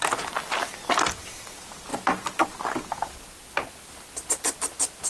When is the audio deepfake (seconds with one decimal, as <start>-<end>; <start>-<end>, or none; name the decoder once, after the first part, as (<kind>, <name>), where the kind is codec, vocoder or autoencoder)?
none